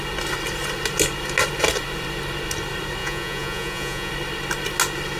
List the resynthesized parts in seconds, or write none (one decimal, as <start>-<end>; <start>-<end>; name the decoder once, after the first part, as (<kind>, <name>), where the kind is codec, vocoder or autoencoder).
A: 3.0-4.1 (vocoder, Vocos)